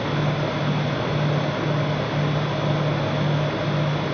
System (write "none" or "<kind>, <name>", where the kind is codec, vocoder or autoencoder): none